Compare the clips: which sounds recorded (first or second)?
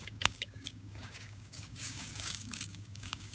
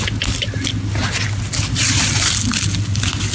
second